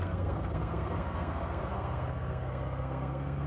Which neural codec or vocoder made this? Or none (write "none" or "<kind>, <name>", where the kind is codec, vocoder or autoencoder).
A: codec, SNAC